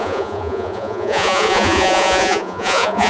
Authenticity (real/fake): fake